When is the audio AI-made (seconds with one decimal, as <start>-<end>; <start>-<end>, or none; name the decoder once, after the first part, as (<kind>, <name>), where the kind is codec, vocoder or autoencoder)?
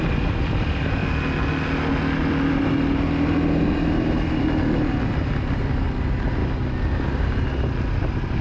0.0-1.0 (vocoder, BigVGAN v2); 6.0-6.4